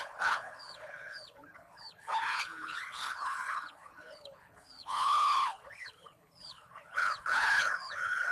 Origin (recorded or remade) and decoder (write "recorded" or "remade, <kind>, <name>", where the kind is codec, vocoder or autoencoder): remade, codec, HILCodec